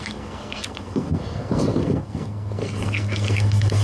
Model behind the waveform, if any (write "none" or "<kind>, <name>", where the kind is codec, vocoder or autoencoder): codec, SNAC